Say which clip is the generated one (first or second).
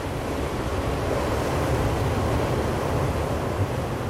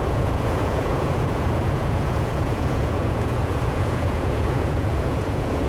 second